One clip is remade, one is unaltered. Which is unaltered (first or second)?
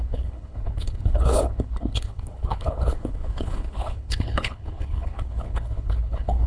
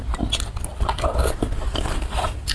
second